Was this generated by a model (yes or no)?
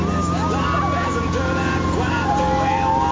no